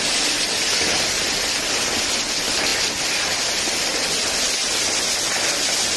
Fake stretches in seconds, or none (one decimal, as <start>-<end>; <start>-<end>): none